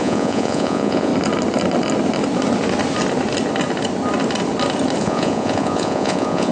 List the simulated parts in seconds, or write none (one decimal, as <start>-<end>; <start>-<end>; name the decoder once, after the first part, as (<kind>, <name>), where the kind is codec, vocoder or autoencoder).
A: 0.0-1.1 (vocoder, Vocos); 5.0-6.5